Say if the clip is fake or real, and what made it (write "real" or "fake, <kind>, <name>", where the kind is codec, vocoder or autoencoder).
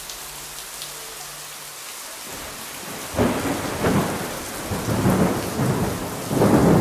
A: real